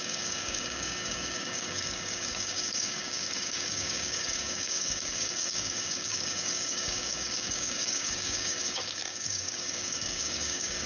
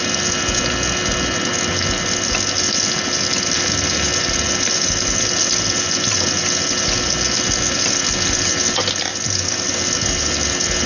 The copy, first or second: first